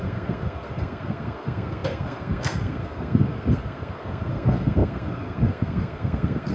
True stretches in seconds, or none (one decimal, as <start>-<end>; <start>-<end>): none